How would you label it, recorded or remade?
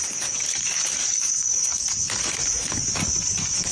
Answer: remade